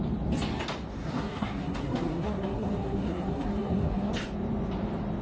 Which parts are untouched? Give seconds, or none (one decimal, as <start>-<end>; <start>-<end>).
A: 0.0-1.0; 4.1-5.2